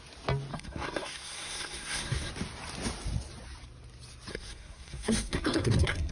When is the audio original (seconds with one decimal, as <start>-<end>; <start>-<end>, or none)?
0.0-0.5; 2.3-4.3